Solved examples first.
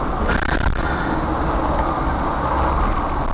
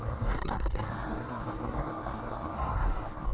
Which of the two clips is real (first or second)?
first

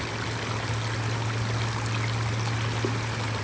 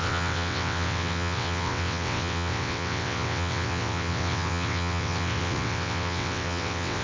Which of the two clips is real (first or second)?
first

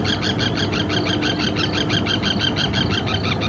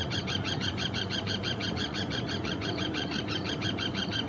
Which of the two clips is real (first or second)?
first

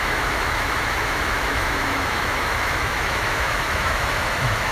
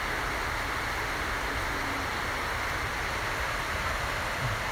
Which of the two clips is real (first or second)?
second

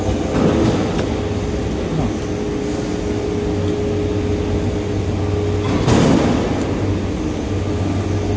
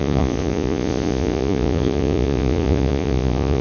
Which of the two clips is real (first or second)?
first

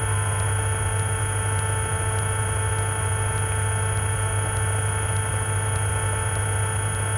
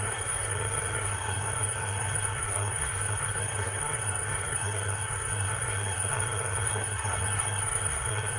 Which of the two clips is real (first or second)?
first